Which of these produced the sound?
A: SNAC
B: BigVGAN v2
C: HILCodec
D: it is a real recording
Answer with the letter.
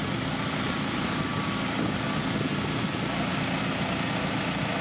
D